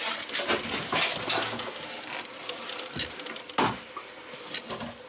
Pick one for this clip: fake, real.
real